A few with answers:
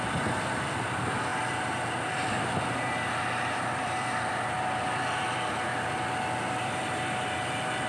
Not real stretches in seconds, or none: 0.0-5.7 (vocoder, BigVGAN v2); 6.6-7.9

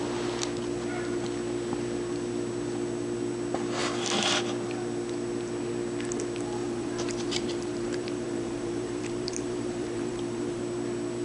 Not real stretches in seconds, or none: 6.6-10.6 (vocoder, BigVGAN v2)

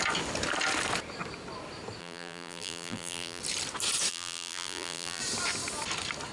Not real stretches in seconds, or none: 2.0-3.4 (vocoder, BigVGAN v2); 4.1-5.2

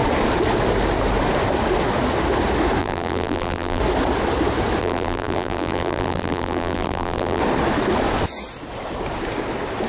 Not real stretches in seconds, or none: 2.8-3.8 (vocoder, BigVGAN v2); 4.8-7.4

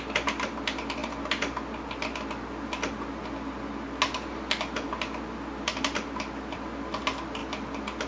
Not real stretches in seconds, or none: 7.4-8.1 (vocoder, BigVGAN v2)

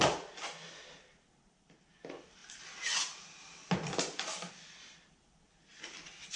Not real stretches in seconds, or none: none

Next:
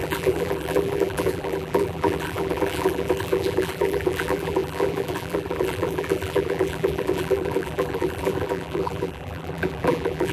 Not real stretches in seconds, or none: 0.0-10.3 (vocoder, BigVGAN v2)

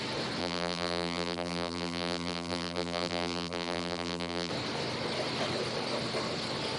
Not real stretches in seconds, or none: 0.4-4.5 (vocoder, BigVGAN v2)